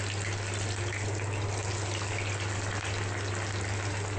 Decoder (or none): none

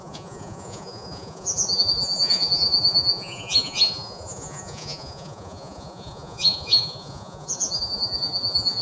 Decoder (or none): vocoder, Vocos